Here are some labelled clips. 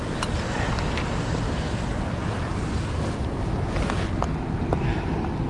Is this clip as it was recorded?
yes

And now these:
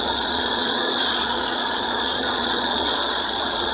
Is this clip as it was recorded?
no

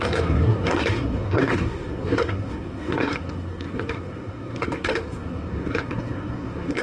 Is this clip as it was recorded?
no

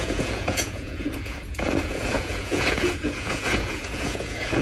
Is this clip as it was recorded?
no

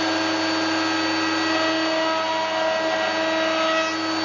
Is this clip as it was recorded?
yes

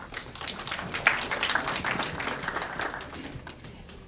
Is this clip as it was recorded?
yes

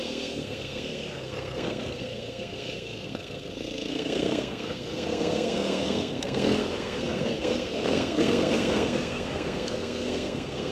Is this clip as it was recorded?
no